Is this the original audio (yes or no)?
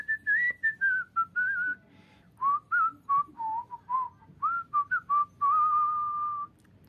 yes